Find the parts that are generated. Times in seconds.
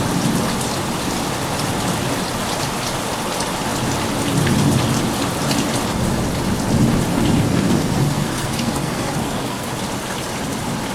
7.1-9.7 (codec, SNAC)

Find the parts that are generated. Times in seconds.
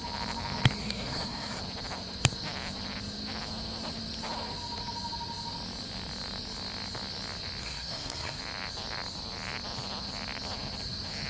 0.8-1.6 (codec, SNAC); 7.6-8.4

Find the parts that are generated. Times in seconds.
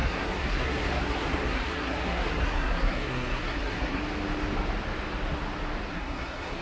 0.0-4.0 (codec, SNAC); 5.9-6.6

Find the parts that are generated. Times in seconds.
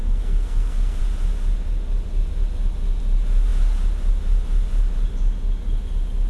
0.0-1.0 (codec, SNAC)